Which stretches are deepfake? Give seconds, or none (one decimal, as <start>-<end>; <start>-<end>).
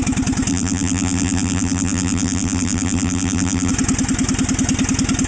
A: 0.5-3.7